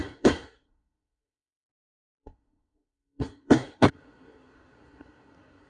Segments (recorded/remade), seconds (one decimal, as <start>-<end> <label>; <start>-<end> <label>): 0.0-5.7 remade